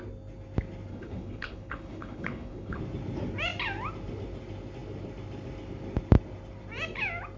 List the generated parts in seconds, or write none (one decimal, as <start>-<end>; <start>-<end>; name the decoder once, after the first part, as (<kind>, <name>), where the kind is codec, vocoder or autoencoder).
0.9-2.8 (codec, HILCodec)

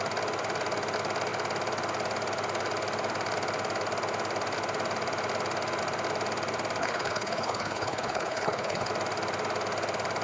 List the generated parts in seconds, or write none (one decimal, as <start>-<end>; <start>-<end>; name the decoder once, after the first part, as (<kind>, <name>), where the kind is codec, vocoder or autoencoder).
6.8-8.9 (codec, HILCodec)

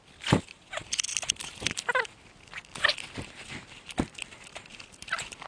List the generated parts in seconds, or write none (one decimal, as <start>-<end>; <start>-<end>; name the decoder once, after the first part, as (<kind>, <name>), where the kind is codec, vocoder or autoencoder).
none

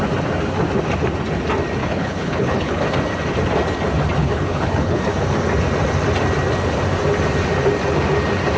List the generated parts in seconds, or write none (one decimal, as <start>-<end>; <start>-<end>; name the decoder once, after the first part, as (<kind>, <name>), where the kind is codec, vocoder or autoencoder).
1.8-2.8 (codec, HILCodec); 4.2-5.0